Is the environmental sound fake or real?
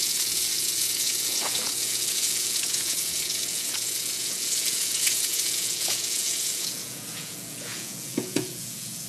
fake